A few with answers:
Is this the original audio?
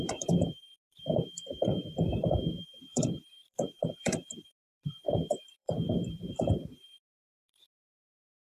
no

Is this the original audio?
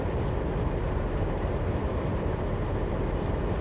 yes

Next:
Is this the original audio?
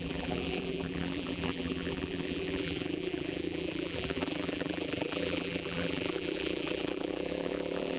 no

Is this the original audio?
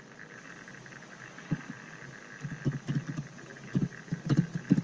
no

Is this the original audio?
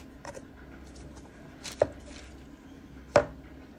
yes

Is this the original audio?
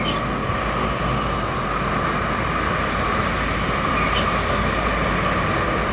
yes